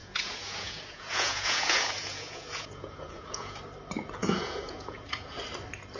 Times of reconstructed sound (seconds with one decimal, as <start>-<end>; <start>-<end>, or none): 0.0-3.6; 4.2-5.4